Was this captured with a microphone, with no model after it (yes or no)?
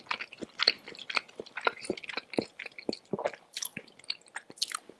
yes